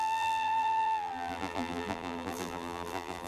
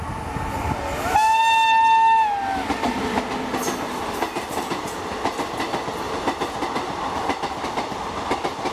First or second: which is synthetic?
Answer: first